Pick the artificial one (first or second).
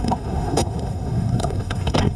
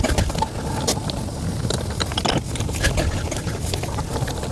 first